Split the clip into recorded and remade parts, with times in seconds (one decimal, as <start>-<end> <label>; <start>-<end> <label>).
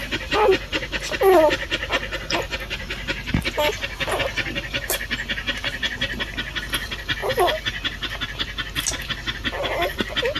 0.0-10.4 recorded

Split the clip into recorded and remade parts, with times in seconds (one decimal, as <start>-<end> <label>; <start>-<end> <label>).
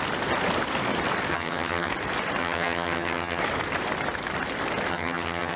0.0-1.3 recorded; 1.3-1.9 remade; 1.9-2.4 recorded; 2.4-3.4 remade; 3.4-4.9 recorded; 4.9-5.6 remade